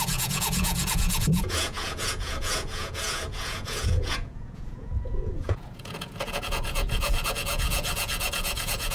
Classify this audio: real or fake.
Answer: fake